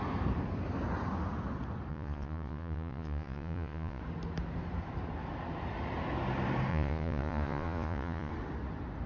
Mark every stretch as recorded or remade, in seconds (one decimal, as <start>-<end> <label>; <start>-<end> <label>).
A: 0.0-1.9 recorded; 1.9-4.0 remade; 4.0-6.7 recorded; 6.7-8.3 remade; 8.3-9.1 recorded